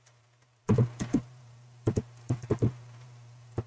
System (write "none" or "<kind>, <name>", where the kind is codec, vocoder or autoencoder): vocoder, BigVGAN v2